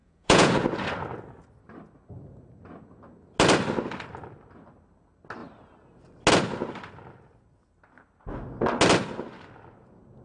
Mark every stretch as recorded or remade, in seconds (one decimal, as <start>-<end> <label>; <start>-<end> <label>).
0.0-0.5 remade; 0.5-10.2 recorded